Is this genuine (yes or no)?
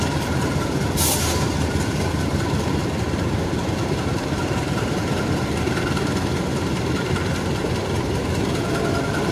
no